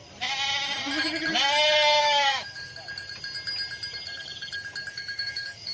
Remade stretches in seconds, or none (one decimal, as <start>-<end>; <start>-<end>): 2.0-2.7; 4.9-5.7

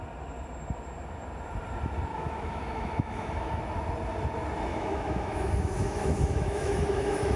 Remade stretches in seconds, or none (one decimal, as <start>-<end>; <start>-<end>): 2.1-3.6; 4.7-7.4

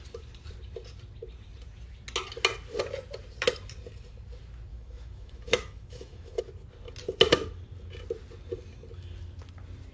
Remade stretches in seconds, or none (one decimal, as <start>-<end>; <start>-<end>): 4.7-6.4

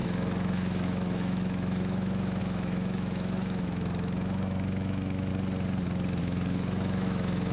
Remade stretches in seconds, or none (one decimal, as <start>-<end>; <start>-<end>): 0.0-5.3; 6.2-7.5

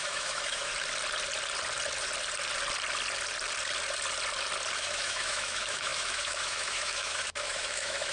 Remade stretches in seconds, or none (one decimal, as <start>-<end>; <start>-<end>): 0.0-0.7; 4.7-8.1

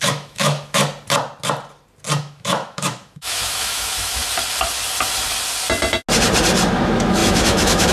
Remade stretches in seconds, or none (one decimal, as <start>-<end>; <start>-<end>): 0.0-0.8; 2.2-4.2; 6.7-7.9